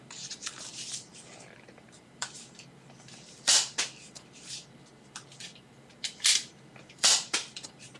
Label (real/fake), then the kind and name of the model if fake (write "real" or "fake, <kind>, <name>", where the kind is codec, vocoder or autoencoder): fake, vocoder, BigVGAN v2